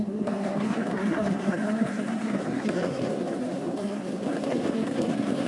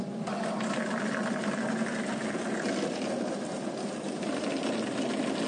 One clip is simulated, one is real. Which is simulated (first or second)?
first